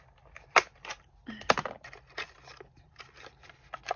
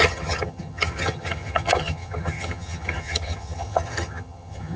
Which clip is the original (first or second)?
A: first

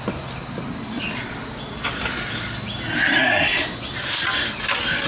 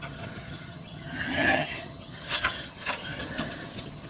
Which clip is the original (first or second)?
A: first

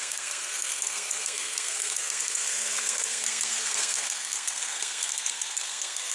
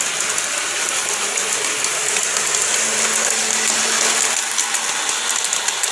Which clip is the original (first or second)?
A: second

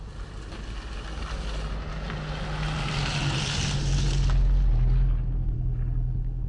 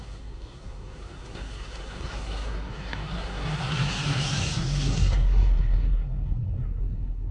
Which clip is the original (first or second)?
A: first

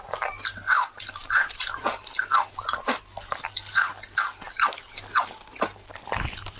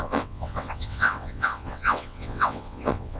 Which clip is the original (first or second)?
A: first